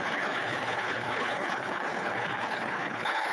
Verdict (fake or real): fake